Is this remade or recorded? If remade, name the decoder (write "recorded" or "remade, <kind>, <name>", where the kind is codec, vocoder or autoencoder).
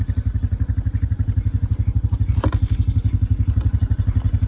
recorded